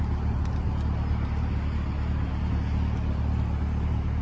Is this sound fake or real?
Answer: real